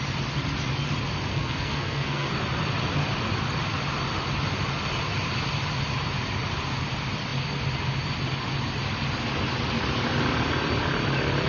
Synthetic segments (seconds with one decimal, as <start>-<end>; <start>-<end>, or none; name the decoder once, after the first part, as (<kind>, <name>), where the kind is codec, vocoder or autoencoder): 1.3-2.3 (codec, SNAC)